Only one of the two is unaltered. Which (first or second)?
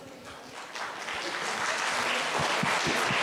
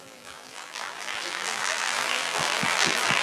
first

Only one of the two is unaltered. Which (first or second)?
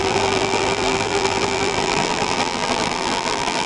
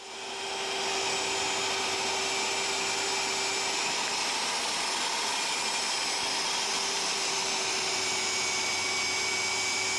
second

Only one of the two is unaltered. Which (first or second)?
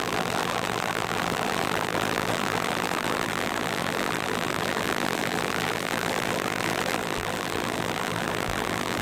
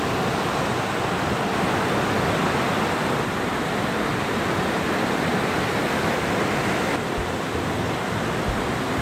second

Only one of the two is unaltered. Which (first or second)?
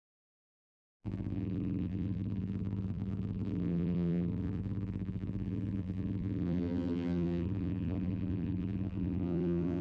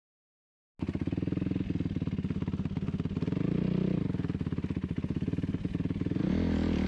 second